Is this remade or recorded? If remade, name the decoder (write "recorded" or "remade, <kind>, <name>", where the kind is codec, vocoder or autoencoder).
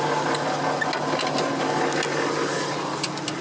recorded